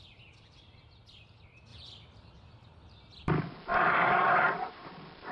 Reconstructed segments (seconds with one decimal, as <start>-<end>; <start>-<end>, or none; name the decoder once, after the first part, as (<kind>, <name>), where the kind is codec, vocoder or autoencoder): 1.7-3.3 (vocoder, BigVGAN v2); 3.7-5.3